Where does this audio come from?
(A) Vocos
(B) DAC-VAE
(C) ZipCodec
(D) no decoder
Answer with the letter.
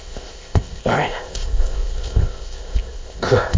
C